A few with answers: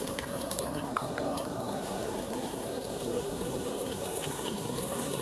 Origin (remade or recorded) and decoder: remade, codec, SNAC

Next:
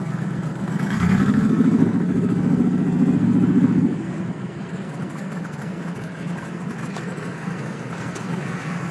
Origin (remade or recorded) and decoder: remade, codec, SNAC